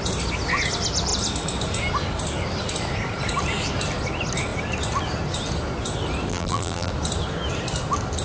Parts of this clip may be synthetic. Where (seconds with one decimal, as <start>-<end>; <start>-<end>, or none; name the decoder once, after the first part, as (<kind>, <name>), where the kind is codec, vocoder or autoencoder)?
6.3-6.9 (vocoder, BigVGAN v2)